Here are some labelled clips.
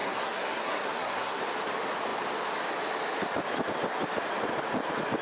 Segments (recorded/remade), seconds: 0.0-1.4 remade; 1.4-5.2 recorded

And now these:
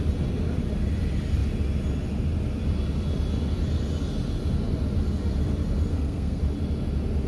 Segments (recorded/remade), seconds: 0.0-5.9 recorded; 5.9-6.4 remade; 6.4-7.3 recorded

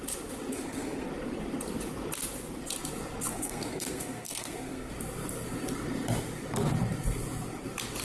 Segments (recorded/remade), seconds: 0.0-0.5 recorded; 0.5-1.1 remade; 1.1-3.3 recorded; 3.3-4.9 remade; 4.9-8.0 recorded